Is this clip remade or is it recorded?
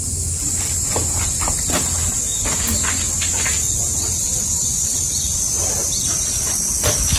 recorded